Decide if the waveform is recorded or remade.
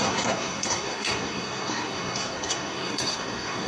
remade